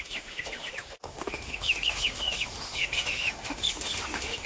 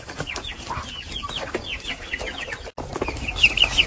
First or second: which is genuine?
second